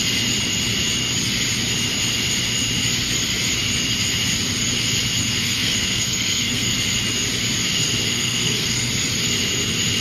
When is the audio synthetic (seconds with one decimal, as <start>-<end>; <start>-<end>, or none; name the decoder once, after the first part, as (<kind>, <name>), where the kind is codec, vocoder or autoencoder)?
5.4-6.7 (codec, SNAC); 8.1-8.9